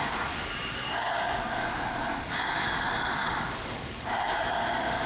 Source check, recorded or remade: remade